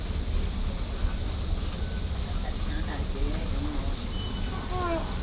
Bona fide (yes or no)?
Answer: yes